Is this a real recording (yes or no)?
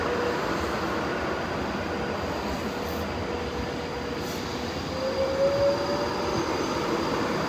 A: yes